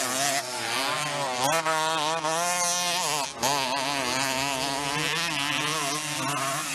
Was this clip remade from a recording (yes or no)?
no